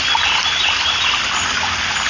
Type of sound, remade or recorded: recorded